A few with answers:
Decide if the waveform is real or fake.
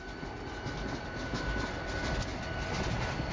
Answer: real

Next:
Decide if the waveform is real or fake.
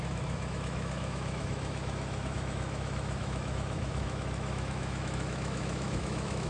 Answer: fake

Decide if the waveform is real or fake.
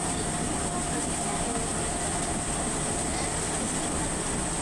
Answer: real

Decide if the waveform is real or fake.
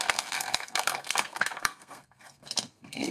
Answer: fake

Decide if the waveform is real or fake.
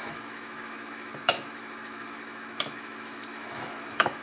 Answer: fake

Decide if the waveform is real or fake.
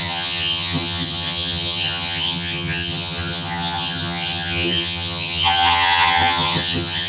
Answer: fake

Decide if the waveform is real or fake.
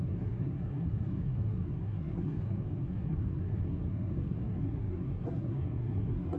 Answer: fake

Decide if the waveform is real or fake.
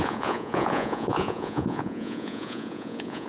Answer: fake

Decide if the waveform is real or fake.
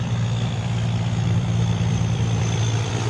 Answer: fake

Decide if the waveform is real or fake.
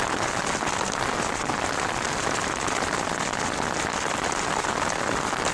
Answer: real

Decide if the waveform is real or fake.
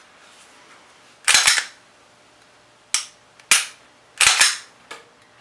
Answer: real